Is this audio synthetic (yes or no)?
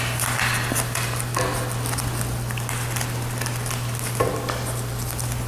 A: no